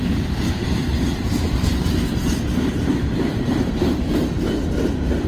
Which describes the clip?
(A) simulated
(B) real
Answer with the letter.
A